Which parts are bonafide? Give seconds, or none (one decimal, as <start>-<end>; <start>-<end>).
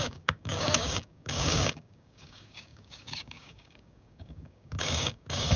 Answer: none